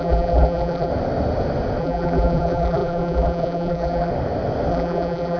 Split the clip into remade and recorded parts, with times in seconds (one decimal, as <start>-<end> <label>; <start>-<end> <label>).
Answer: 0.0-0.9 remade; 0.9-1.8 recorded; 1.8-4.1 remade; 4.1-4.7 recorded; 4.7-5.4 remade